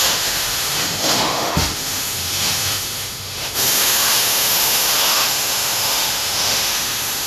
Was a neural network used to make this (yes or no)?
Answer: yes